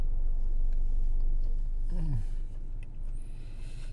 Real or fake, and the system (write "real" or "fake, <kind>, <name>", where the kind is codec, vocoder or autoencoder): real